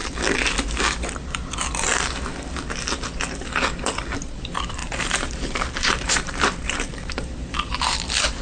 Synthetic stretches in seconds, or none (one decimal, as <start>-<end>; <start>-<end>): 4.8-8.4